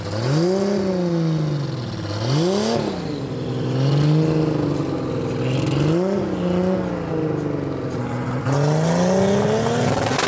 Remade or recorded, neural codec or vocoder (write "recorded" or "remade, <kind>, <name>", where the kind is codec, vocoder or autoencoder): recorded